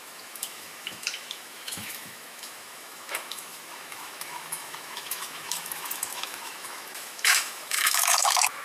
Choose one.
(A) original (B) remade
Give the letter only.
B